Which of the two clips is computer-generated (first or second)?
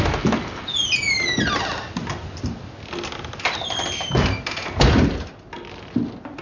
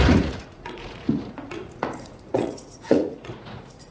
second